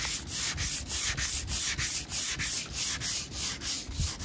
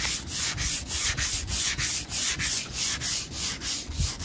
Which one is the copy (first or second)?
second